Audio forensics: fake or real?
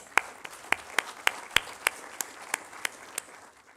real